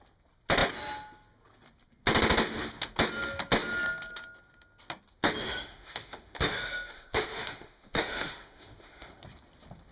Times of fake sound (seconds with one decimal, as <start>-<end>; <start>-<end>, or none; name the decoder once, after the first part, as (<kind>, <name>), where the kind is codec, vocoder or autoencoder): 5.4-9.2 (autoencoder, DAC-VAE)